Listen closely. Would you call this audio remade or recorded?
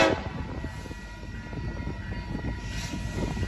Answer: recorded